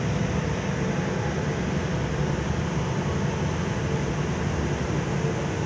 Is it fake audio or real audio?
real